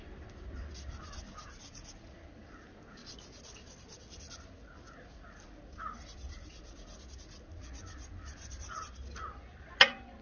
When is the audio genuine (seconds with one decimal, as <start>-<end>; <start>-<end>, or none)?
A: 0.0-10.2